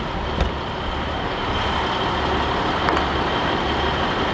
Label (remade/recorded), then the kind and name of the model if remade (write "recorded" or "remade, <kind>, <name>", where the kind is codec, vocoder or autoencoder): recorded